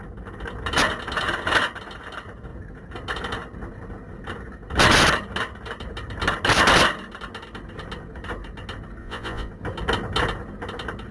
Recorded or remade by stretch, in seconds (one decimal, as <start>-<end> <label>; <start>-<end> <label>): 0.0-9.0 recorded; 9.0-9.5 remade; 9.5-11.1 recorded